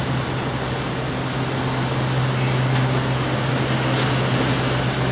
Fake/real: real